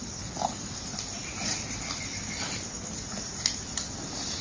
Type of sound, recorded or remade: recorded